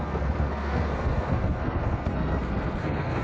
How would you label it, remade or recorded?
remade